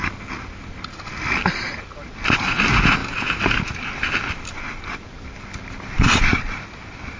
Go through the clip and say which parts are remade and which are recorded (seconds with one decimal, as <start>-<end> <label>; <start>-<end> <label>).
0.0-7.2 recorded